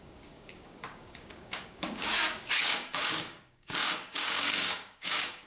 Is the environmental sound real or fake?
fake